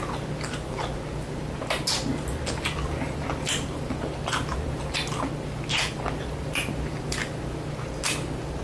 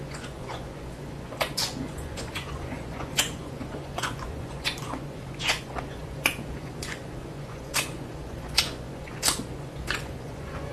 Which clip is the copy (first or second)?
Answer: second